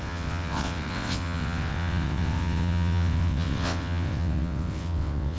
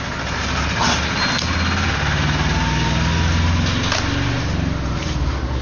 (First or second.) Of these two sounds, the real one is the second